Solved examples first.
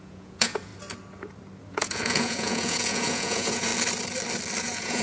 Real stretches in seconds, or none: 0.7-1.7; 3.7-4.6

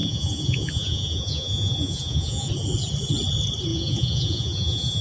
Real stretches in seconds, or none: 2.5-3.7

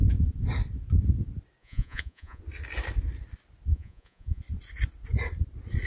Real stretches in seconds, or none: 0.0-1.6; 2.4-3.7; 4.4-5.9

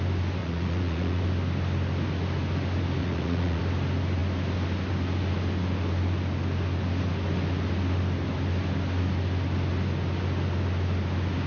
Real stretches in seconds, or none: 0.0-0.4; 1.2-3.0; 3.6-11.5